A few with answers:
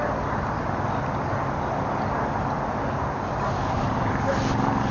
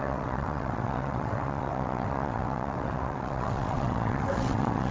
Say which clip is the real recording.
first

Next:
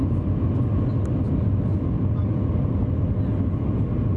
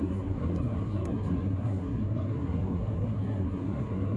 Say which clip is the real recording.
first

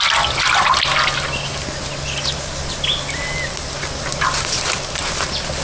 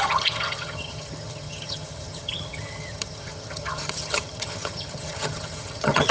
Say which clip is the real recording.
first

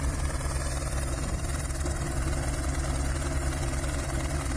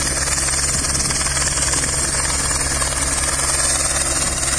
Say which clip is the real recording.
second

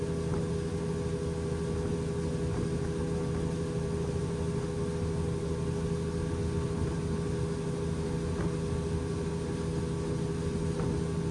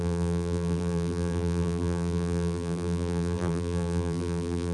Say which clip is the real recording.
first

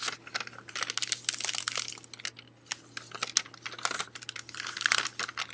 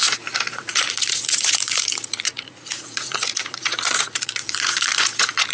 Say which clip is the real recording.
first